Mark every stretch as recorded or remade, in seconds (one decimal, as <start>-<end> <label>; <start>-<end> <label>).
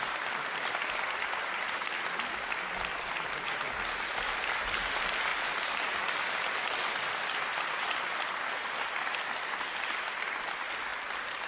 0.0-11.5 recorded